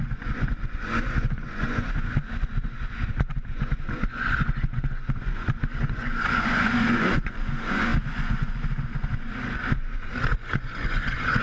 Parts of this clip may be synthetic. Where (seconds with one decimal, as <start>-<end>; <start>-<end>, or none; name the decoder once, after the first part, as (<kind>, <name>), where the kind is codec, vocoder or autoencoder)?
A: 0.0-11.4 (vocoder, Vocos)